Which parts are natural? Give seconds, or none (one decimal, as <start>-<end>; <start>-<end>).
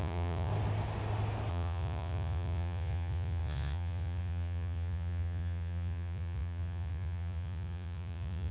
0.5-1.5